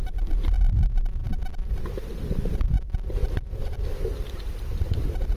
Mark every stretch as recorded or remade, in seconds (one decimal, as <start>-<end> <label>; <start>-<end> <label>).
0.0-5.4 recorded

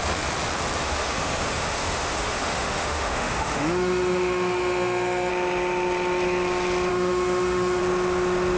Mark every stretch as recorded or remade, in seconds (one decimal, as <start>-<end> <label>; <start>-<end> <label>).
0.0-0.8 recorded; 0.8-5.3 remade; 5.3-6.9 recorded; 6.9-7.8 remade; 7.8-8.6 recorded

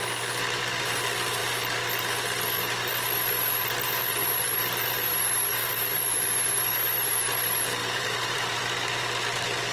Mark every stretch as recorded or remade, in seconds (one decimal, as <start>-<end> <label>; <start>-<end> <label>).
0.0-5.6 recorded; 5.6-6.2 remade; 6.2-7.8 recorded; 7.8-8.6 remade; 8.6-9.7 recorded

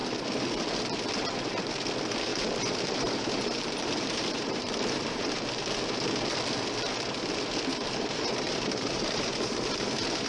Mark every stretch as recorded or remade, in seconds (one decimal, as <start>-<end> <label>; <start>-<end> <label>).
0.0-2.3 recorded; 2.3-5.6 remade; 5.6-7.7 recorded; 7.7-10.3 remade

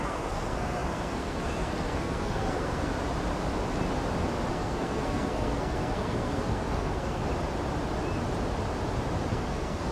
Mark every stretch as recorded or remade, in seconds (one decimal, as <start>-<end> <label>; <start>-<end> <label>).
0.0-2.9 remade; 2.9-4.5 recorded; 4.5-7.2 remade; 7.2-9.3 recorded; 9.3-9.9 remade